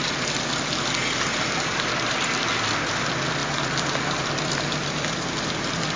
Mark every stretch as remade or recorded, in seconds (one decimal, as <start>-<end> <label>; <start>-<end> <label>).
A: 0.0-3.4 recorded; 3.4-5.2 remade; 5.2-6.0 recorded